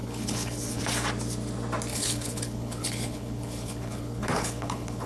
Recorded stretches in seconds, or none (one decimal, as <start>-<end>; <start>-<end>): 0.8-1.9